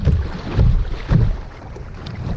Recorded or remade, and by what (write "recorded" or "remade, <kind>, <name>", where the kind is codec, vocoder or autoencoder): remade, vocoder, BigVGAN v2